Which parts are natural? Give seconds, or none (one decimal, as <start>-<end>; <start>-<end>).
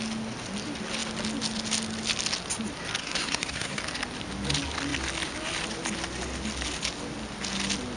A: 0.0-3.0; 3.8-8.0